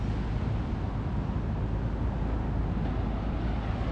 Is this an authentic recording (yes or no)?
yes